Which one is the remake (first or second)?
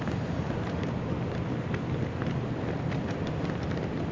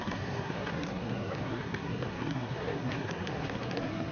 second